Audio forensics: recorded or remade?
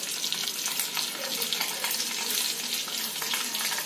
recorded